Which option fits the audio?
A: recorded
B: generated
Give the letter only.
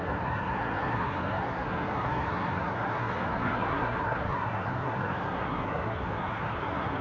B